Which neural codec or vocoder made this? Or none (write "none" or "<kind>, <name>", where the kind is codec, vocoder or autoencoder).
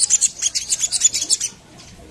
none